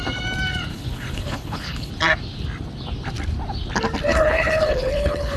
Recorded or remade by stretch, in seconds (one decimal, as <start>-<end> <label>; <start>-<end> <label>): 0.0-0.7 recorded; 0.7-1.9 remade; 1.9-4.1 recorded; 4.1-5.4 remade